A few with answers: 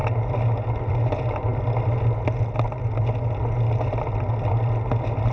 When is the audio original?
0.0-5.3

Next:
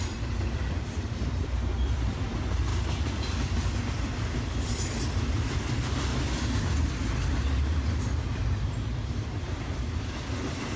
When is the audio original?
6.1-10.4

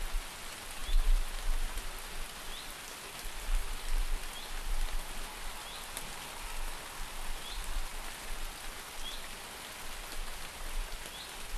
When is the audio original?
0.0-11.6

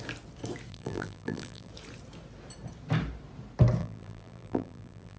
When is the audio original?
0.0-0.7; 1.7-3.8